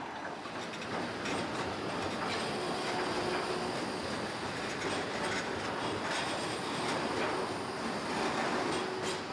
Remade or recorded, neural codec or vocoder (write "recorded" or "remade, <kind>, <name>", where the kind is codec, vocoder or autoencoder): recorded